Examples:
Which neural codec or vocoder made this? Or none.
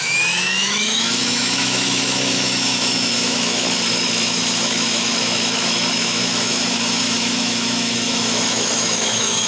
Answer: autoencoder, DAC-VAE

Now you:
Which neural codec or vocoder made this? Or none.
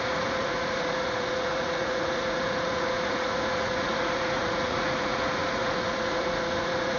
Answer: vocoder, Vocos